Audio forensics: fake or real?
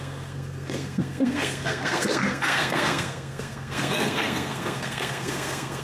fake